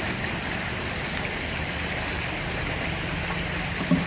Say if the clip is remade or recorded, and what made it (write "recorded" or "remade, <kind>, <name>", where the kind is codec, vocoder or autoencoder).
recorded